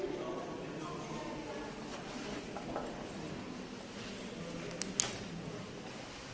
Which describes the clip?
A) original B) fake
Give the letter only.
A